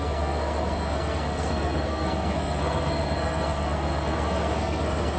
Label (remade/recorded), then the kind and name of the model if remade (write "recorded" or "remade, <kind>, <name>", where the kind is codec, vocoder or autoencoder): remade, codec, SNAC